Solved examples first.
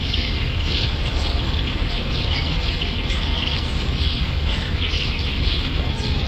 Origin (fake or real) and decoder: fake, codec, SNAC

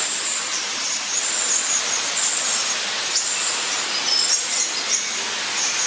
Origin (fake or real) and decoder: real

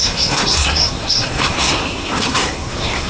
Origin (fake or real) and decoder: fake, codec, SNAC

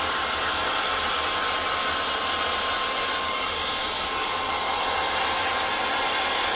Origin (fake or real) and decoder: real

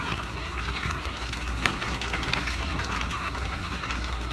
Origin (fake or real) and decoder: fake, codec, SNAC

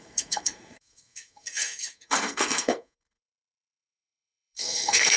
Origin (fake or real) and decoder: fake, codec, SNAC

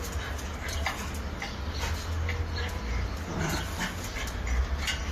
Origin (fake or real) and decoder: real